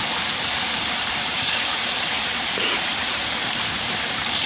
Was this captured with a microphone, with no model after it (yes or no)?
no